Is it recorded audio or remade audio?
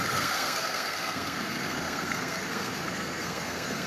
remade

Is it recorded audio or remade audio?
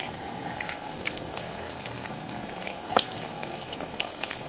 remade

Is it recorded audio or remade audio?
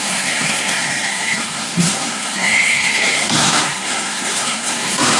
remade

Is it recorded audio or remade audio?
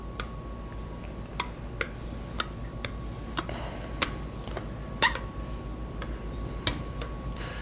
recorded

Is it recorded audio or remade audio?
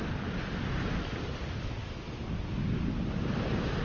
recorded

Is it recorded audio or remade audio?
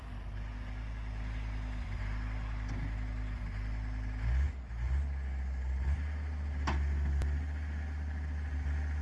recorded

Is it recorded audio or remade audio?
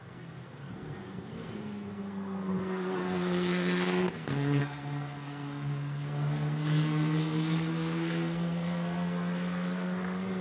remade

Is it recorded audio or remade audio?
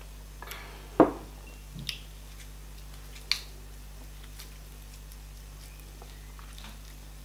recorded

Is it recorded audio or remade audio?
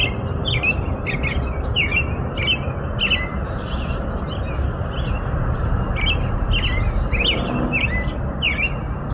recorded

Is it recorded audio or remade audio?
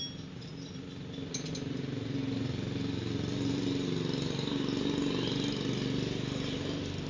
recorded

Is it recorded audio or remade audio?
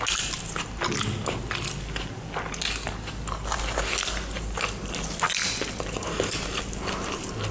recorded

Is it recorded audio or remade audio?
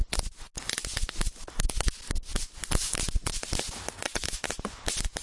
recorded